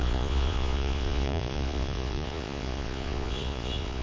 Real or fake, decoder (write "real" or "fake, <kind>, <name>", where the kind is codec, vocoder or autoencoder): fake, vocoder, Vocos